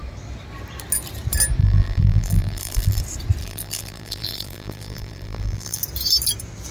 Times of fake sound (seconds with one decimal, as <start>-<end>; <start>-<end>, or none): 1.6-3.0; 3.4-5.8